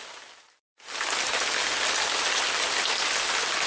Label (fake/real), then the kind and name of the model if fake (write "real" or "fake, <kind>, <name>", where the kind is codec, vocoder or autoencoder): real